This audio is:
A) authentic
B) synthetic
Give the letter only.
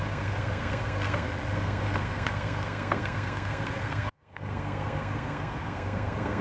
B